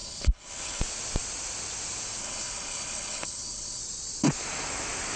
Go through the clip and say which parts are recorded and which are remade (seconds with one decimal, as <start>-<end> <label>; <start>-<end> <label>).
0.0-0.8 remade; 0.8-2.2 recorded; 2.2-3.8 remade; 3.8-5.2 recorded